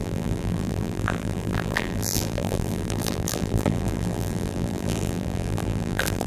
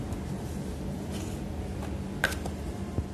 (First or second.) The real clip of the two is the second